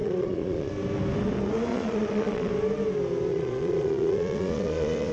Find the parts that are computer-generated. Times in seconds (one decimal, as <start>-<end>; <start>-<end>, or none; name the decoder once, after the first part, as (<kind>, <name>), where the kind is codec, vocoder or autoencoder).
0.0-0.7 (vocoder, Vocos); 1.7-2.5; 3.3-5.1